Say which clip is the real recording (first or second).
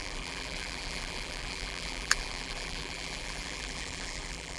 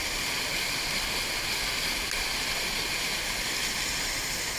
second